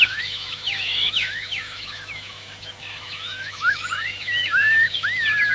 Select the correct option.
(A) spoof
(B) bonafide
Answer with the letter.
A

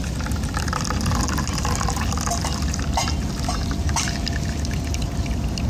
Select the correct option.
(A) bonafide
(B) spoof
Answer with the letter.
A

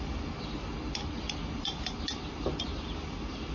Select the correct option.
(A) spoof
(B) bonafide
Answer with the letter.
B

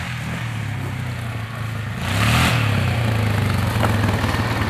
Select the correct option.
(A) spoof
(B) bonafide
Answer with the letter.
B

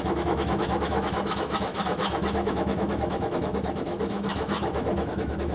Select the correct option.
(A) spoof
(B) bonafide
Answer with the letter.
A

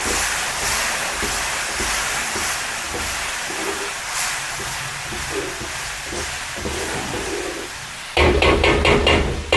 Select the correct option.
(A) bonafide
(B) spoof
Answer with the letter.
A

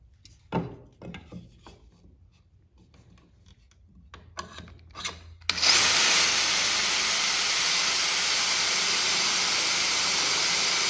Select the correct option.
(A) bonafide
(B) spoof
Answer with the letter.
A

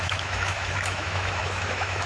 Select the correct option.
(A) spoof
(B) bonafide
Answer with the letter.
A